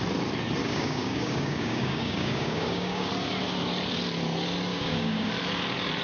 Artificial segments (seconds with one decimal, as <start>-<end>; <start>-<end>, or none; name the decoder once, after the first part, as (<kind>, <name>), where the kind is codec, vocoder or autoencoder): 0.6-3.1 (codec, DAC); 4.7-5.3